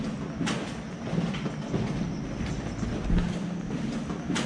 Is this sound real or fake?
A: real